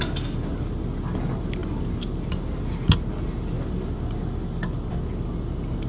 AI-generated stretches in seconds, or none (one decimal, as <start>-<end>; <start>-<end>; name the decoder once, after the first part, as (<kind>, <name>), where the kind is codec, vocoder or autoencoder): none